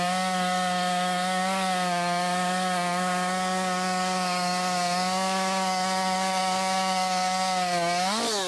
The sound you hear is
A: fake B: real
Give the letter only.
A